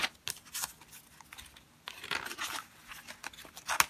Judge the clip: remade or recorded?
recorded